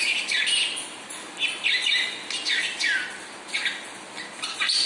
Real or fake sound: real